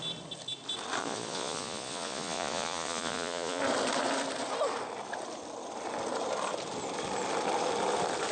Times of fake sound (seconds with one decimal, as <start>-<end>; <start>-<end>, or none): 1.0-3.6